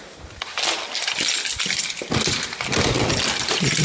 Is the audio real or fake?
real